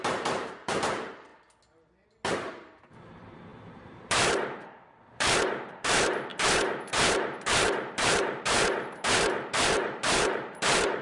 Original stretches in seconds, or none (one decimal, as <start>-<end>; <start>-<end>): 1.3-2.8